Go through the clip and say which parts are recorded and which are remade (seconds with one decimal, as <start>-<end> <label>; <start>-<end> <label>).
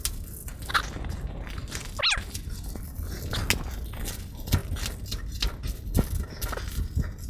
0.0-7.3 recorded